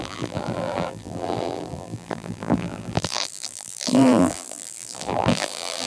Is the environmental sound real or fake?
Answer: fake